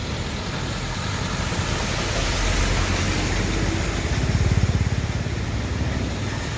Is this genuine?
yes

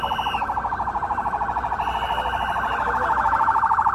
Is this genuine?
yes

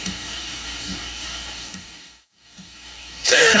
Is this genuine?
no